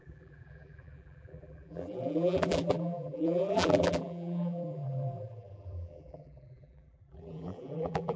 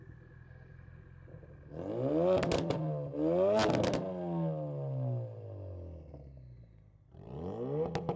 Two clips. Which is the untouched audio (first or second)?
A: second